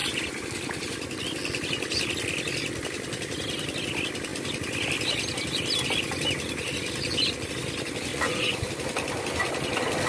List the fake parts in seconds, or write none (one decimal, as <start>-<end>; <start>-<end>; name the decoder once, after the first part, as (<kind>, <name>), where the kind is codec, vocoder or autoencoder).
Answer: 8.1-8.7 (vocoder, Vocos)